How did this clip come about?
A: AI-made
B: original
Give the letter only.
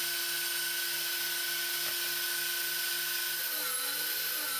B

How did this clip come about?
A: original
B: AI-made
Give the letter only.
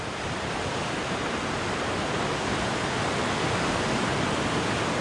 A